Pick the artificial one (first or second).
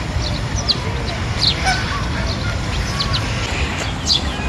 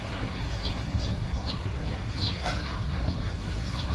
second